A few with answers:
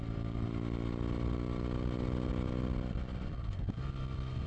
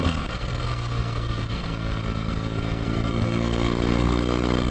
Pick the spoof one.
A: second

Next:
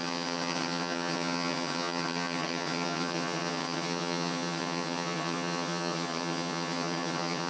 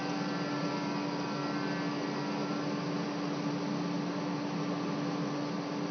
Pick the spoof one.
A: first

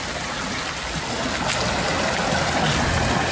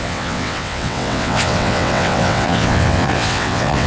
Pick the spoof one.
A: second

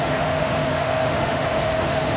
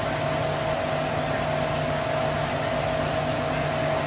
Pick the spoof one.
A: first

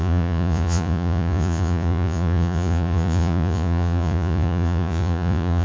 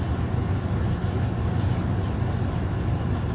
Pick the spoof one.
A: first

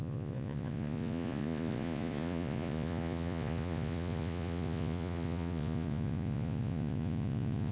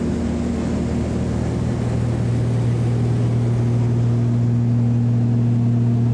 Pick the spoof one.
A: first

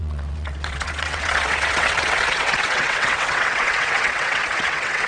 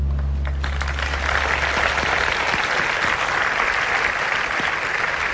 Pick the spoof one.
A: first